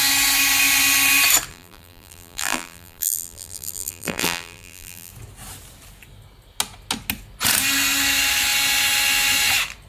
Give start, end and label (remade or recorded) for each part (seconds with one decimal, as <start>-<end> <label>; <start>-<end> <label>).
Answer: 0.0-1.5 recorded; 1.5-5.1 remade; 5.1-9.9 recorded